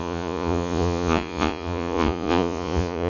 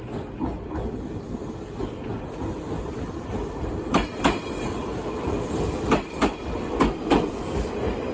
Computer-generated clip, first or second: first